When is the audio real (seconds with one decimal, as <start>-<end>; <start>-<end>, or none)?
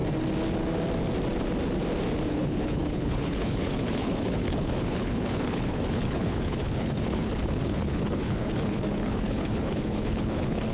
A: 0.0-2.3